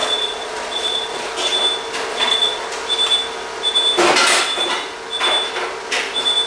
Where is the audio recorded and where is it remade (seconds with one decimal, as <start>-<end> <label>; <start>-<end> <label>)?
0.0-1.3 remade; 1.3-2.1 recorded; 2.1-2.6 remade; 2.6-6.5 recorded